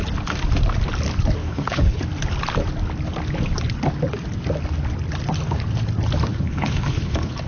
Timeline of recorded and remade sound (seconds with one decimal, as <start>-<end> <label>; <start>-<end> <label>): 0.0-1.4 recorded; 1.4-2.0 remade; 2.0-6.3 recorded; 6.3-7.5 remade